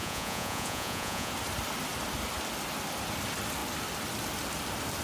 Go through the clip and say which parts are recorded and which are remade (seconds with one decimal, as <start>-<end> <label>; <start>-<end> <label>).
0.0-1.3 remade; 1.3-5.0 recorded